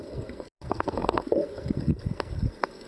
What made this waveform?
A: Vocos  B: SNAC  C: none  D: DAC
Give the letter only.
B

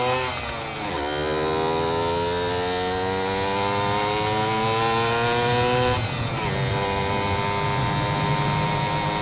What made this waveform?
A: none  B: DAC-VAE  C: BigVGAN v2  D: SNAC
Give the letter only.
A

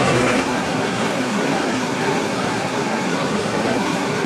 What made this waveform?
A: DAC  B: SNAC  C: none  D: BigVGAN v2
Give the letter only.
B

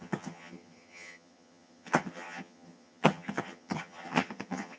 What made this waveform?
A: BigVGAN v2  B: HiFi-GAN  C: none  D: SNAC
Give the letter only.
B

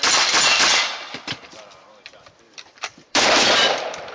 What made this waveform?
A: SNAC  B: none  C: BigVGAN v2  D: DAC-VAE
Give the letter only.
C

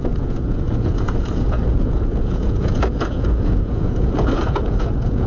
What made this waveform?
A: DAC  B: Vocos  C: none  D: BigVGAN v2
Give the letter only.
B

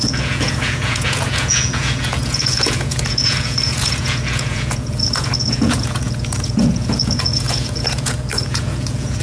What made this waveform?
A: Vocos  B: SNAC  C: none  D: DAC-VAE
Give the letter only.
A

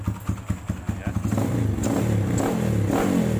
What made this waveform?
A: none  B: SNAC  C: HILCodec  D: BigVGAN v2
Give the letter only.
A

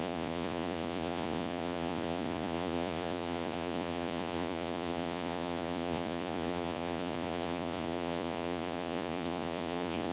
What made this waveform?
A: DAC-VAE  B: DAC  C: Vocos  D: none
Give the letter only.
C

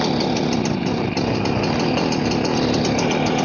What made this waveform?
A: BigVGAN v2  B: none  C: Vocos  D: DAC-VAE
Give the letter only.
B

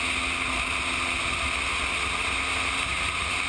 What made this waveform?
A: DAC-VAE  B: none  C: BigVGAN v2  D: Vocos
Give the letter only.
B